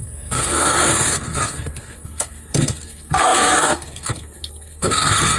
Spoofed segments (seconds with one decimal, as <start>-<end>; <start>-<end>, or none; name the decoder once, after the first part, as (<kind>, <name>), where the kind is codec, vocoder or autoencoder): 0.0-5.4 (codec, SNAC)